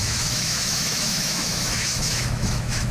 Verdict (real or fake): fake